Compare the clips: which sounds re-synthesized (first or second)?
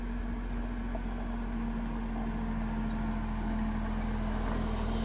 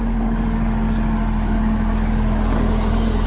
second